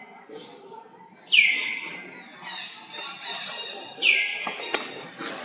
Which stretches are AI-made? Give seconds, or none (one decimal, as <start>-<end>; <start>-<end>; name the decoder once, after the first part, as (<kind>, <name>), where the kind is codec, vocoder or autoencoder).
none